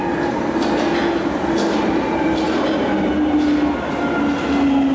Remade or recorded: recorded